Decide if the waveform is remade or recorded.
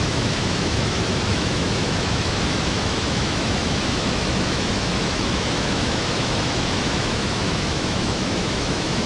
remade